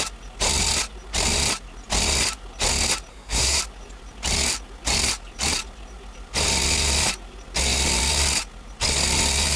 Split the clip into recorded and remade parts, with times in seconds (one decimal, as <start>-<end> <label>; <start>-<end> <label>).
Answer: 0.0-3.1 recorded; 3.1-3.6 remade; 3.6-9.6 recorded